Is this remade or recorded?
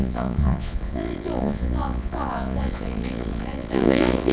remade